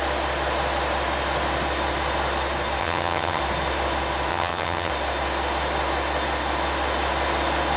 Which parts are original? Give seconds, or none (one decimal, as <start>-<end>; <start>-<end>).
0.0-2.8; 3.4-4.3; 4.9-7.8

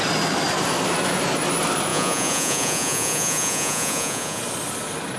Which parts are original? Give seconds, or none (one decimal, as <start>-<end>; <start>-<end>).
0.0-1.9; 4.4-5.2

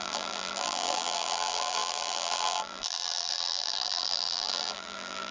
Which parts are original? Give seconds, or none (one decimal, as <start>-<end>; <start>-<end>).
none

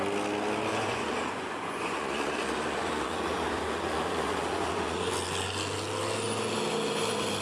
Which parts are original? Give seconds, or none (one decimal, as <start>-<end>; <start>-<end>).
0.0-0.7; 5.1-7.4